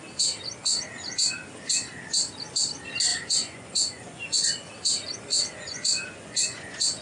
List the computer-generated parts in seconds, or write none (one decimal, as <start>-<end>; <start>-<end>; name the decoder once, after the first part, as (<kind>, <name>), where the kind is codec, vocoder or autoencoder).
3.1-4.7 (vocoder, Vocos); 5.3-7.0